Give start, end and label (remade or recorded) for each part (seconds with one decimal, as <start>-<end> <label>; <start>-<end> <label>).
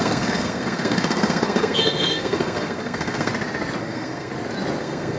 0.0-3.3 remade; 3.3-3.8 recorded; 3.8-4.3 remade; 4.3-4.8 recorded; 4.8-5.2 remade